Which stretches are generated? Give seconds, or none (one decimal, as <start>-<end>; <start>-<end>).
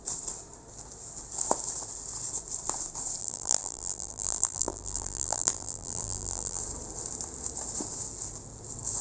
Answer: 3.2-6.6